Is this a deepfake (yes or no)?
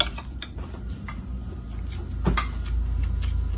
no